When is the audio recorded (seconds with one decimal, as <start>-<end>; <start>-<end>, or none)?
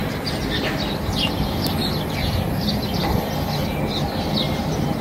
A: 0.0-5.0